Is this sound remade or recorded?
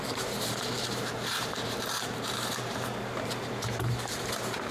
remade